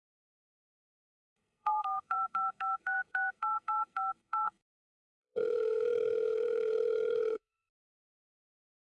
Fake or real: fake